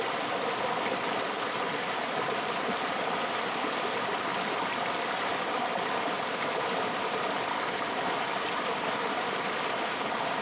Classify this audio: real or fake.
real